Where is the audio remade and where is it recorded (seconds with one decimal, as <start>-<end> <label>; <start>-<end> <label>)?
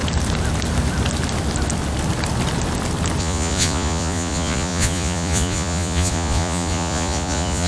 0.0-3.2 recorded; 3.2-7.7 remade